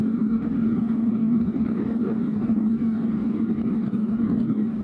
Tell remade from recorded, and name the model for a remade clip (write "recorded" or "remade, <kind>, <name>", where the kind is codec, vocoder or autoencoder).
remade, codec, DAC